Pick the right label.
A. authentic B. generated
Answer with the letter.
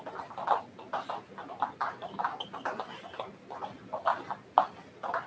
A